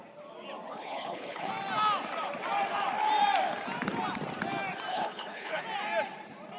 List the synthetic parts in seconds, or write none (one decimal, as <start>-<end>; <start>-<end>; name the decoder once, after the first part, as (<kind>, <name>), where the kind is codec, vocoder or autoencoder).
0.7-1.5 (codec, HILCodec); 4.9-5.6